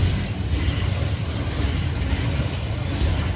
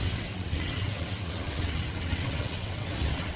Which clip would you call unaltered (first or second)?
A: first